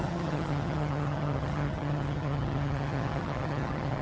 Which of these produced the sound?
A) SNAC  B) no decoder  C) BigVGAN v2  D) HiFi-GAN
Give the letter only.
D